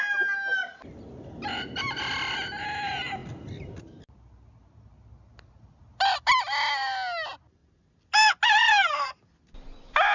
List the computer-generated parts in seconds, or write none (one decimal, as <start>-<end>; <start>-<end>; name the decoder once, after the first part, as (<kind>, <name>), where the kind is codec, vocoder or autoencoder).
none